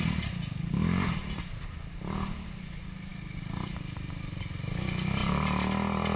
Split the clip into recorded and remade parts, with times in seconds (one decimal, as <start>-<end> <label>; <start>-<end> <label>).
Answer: 0.0-6.2 recorded